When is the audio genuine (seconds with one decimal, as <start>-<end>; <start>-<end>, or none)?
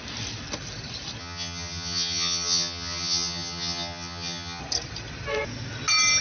0.0-1.2; 4.6-6.2